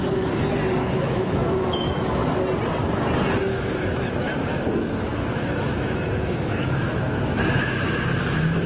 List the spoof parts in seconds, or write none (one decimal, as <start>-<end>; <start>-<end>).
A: 0.8-2.2; 3.4-8.7

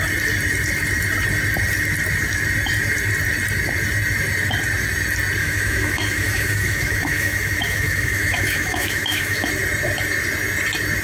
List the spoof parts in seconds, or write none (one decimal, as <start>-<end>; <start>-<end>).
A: 5.4-9.5